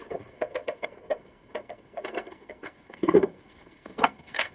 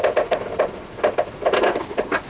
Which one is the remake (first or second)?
first